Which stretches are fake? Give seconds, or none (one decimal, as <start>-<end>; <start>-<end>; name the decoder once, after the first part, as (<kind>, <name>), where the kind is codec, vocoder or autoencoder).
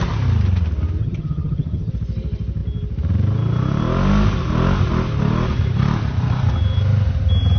1.0-1.9 (vocoder, HiFi-GAN)